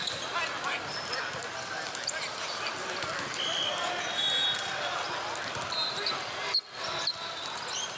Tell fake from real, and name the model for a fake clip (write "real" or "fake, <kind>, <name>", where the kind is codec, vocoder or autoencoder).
real